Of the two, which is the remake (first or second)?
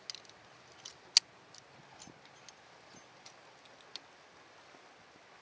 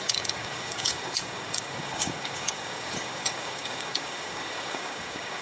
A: second